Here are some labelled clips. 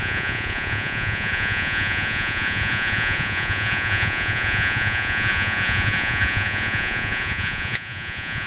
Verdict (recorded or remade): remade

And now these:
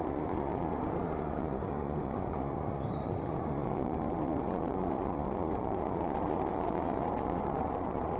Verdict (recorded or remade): remade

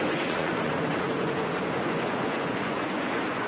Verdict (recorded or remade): remade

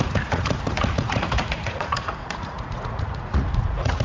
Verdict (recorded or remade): remade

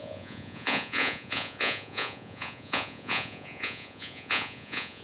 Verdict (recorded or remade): remade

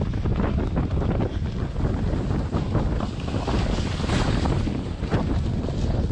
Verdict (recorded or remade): recorded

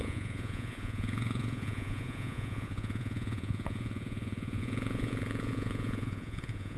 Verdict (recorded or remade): remade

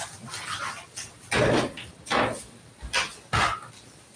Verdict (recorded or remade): recorded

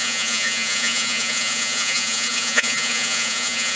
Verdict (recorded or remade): remade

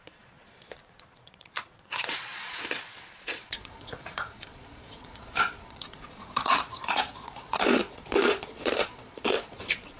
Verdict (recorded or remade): remade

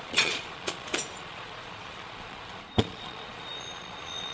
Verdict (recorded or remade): remade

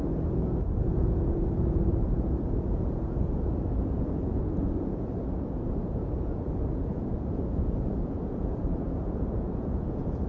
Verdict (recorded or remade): remade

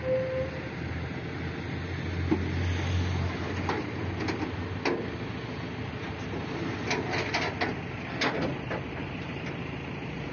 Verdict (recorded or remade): recorded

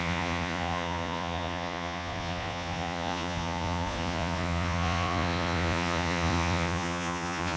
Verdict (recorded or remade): remade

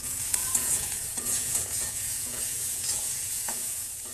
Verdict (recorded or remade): remade